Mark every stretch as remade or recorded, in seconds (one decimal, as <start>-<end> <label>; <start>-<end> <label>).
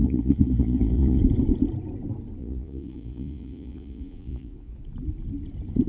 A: 0.0-1.2 remade; 1.2-2.4 recorded; 2.4-4.7 remade; 4.7-5.9 recorded